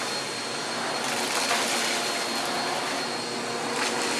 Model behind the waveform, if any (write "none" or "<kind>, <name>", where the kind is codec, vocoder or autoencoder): none